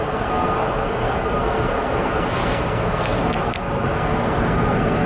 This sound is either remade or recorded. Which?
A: remade